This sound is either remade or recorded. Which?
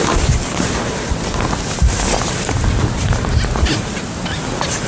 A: recorded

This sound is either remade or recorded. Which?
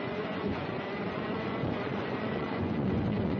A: remade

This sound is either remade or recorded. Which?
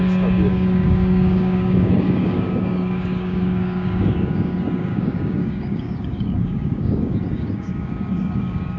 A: remade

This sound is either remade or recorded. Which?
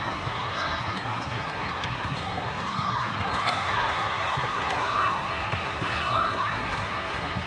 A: remade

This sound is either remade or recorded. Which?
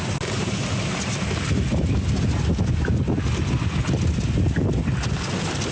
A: recorded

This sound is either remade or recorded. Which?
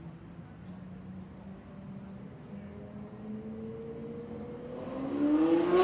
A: recorded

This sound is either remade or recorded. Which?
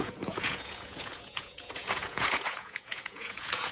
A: remade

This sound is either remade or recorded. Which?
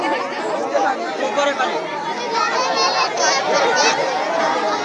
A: recorded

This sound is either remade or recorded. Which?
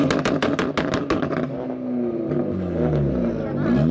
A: recorded